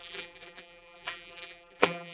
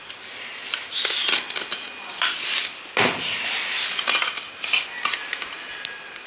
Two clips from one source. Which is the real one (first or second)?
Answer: second